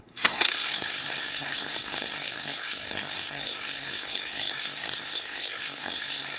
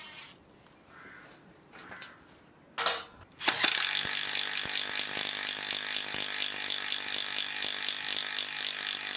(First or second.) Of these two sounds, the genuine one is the second